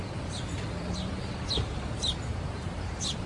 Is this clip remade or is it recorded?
recorded